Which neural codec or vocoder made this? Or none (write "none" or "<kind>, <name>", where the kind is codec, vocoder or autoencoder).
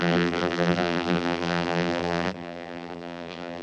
vocoder, BigVGAN v2